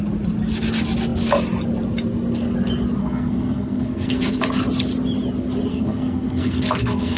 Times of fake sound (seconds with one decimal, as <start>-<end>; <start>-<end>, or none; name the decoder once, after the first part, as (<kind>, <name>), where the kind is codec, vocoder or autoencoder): 3.0-4.4 (codec, SNAC); 5.7-7.2